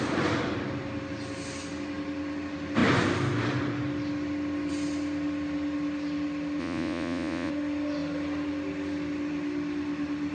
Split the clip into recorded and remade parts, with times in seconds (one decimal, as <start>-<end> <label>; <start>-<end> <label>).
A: 0.0-6.6 recorded; 6.6-7.5 remade; 7.5-10.3 recorded